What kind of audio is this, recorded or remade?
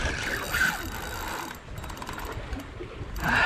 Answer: recorded